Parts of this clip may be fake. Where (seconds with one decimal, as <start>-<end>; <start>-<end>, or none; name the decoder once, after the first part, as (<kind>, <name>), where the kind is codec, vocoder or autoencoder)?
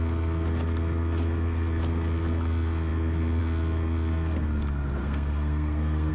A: 5.0-6.1 (codec, SNAC)